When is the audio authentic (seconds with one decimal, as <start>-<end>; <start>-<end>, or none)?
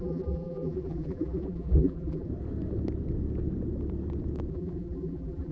2.3-4.5